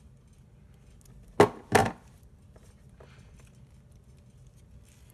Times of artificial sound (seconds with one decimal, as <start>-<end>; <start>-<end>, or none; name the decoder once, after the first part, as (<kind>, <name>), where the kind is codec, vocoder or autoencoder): 1.8-2.7 (vocoder, BigVGAN v2)

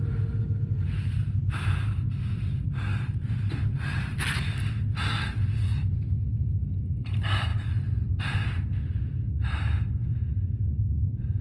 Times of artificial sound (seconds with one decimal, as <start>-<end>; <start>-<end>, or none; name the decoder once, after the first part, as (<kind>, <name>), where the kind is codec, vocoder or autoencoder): none

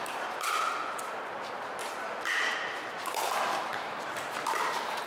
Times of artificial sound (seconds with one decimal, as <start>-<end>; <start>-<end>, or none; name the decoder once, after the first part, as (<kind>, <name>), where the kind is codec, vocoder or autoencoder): 3.7-5.1 (vocoder, BigVGAN v2)

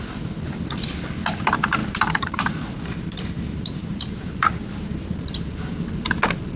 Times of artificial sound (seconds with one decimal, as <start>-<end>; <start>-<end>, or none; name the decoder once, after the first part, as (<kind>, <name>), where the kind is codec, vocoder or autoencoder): 1.8-5.8 (vocoder, BigVGAN v2)

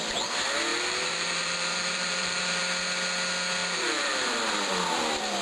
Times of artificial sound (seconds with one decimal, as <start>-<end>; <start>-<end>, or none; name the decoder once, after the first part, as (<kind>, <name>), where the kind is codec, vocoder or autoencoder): 0.7-2.6 (vocoder, BigVGAN v2); 3.6-4.7